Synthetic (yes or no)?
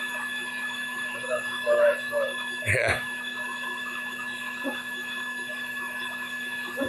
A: yes